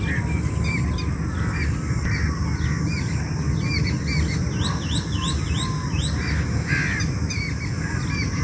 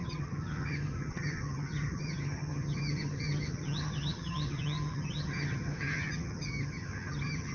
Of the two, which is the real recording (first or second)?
first